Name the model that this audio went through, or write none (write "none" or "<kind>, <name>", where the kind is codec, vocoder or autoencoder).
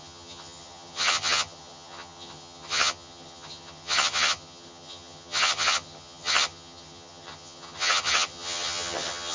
vocoder, HiFi-GAN